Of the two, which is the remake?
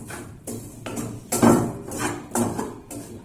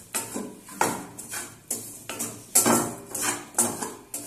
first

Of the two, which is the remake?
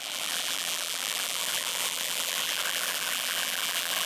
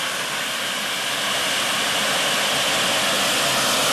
first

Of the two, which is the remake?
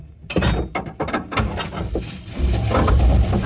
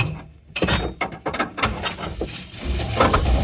second